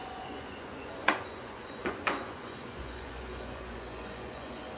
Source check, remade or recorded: remade